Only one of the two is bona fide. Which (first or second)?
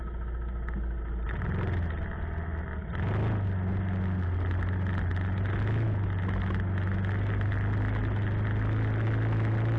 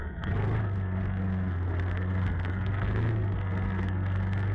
first